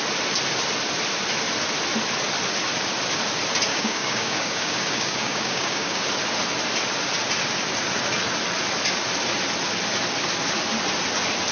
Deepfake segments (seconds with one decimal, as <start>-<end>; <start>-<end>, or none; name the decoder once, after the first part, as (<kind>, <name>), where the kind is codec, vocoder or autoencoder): 3.7-6.0 (codec, DAC)